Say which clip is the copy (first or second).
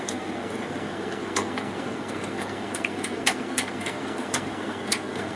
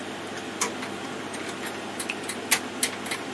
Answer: first